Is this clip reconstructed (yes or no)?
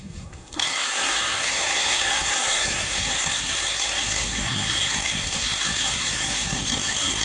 yes